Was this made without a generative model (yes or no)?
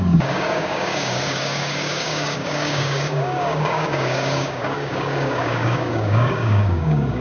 no